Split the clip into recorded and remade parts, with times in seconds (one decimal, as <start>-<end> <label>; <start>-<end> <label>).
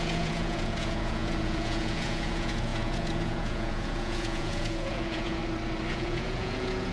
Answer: 0.0-5.4 remade; 5.4-5.9 recorded; 5.9-6.9 remade